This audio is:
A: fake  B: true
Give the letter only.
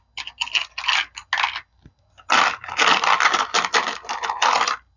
B